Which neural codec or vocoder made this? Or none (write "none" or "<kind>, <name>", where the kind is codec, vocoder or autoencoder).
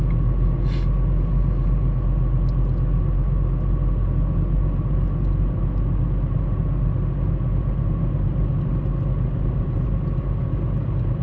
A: none